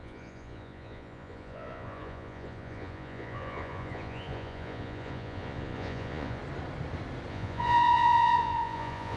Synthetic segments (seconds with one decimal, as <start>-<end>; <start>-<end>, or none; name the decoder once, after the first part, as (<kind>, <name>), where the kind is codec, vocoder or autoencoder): 0.0-6.4 (vocoder, Vocos); 7.3-9.2